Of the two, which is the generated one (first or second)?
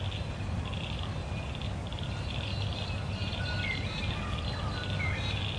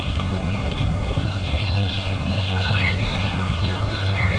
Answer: second